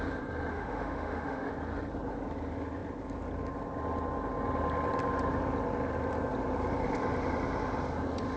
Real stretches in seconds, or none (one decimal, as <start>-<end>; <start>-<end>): 0.0-0.5; 1.5-8.4